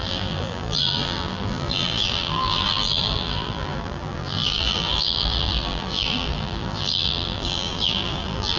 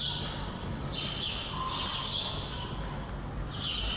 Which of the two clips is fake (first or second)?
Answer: first